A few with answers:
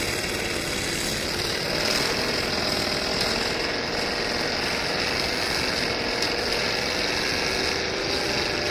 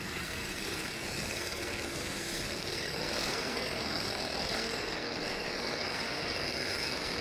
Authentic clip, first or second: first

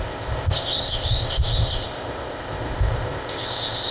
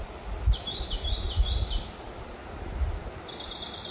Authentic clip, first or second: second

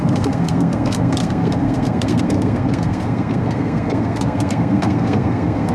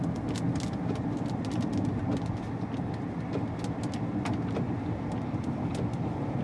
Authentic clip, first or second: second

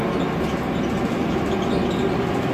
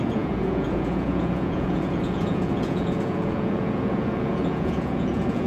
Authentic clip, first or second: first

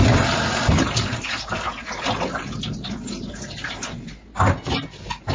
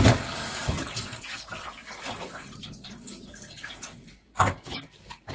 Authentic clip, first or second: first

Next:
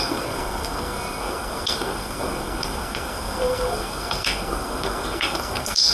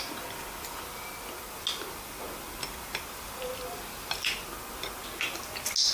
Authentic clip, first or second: second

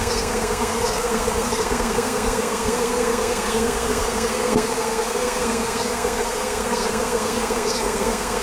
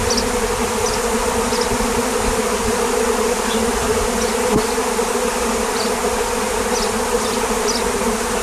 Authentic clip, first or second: second